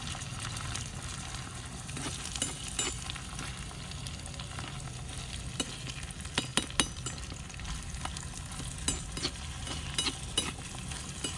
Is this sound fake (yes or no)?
no